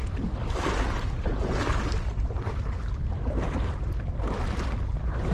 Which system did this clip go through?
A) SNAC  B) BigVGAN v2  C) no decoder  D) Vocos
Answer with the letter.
C